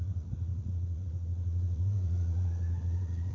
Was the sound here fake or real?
fake